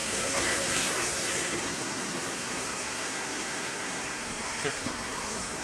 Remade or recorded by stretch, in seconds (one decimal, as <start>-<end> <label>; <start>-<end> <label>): 0.0-5.6 remade